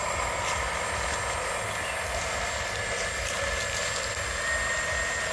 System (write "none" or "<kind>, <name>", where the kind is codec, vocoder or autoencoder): none